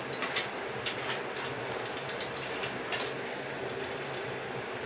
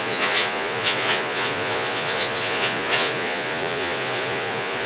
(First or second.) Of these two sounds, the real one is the first